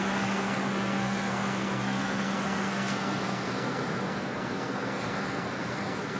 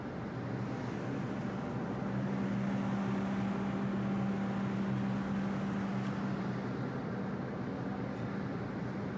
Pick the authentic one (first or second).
second